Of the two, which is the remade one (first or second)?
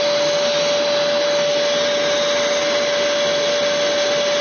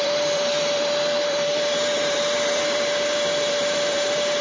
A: second